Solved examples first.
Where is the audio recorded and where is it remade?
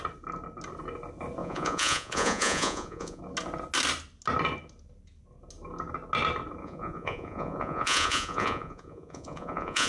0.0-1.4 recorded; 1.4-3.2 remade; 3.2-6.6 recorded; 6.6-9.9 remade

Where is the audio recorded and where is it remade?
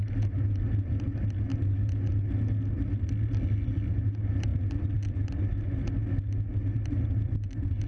0.0-7.9 recorded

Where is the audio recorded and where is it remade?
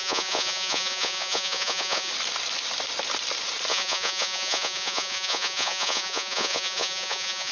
0.0-2.1 remade; 2.1-3.7 recorded; 3.7-7.5 remade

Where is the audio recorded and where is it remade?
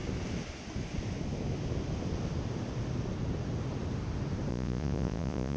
0.0-4.5 recorded; 4.5-5.6 remade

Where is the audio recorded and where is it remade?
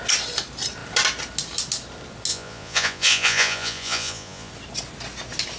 0.0-2.3 recorded; 2.3-4.5 remade; 4.5-5.6 recorded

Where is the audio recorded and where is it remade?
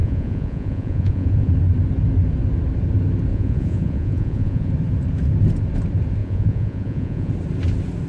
0.0-1.5 remade; 1.5-3.3 recorded; 3.3-4.7 remade; 4.7-6.2 recorded; 6.2-7.3 remade; 7.3-8.1 recorded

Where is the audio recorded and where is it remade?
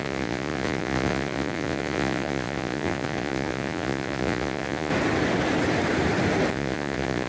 0.0-4.9 remade; 4.9-6.5 recorded; 6.5-7.3 remade